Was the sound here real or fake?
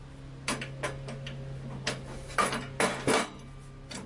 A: real